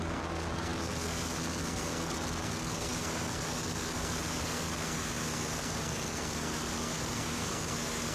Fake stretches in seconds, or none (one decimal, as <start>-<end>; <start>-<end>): 0.0-8.1